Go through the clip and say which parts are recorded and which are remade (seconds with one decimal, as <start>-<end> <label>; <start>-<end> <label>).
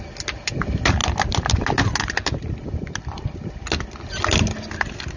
0.0-5.2 recorded